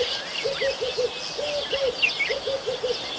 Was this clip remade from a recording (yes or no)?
no